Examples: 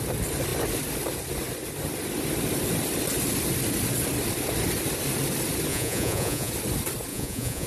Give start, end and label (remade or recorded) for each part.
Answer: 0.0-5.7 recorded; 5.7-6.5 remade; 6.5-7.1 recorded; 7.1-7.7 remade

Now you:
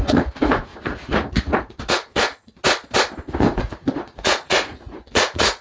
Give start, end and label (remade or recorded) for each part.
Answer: 0.0-2.6 remade; 2.6-3.4 recorded; 3.4-5.6 remade

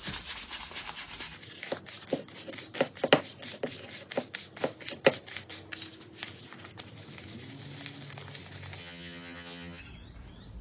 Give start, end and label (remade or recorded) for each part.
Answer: 0.0-8.8 recorded; 8.8-9.8 remade; 9.8-10.6 recorded

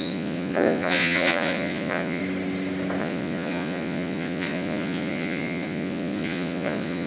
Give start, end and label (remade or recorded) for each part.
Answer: 0.0-2.2 remade; 2.2-3.0 recorded; 3.0-7.1 remade

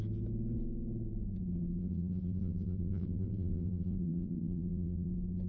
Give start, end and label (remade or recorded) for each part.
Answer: 0.0-1.8 recorded; 1.8-5.1 remade; 5.1-5.5 recorded

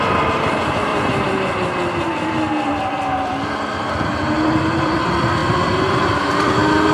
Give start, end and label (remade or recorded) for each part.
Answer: 0.0-0.9 recorded; 0.9-5.0 remade; 5.0-5.4 recorded; 5.4-6.5 remade; 6.5-6.9 recorded